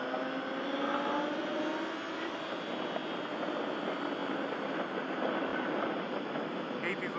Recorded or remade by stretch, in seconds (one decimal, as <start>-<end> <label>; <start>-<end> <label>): 0.0-7.2 recorded